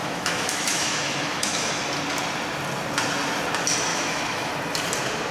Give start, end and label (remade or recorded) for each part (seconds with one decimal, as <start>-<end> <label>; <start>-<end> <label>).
0.0-1.7 remade; 1.7-3.9 recorded; 3.9-4.5 remade; 4.5-5.3 recorded